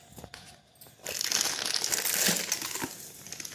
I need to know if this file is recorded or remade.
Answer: recorded